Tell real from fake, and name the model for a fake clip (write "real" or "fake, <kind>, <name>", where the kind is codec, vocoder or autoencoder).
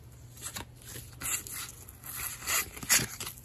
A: real